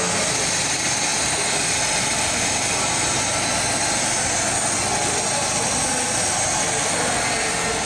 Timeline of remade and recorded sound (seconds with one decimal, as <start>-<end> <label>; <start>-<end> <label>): 0.0-7.9 recorded